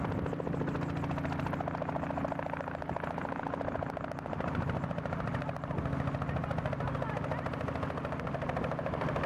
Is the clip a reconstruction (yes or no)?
no